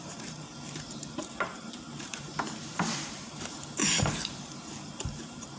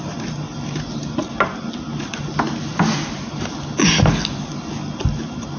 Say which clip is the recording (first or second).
second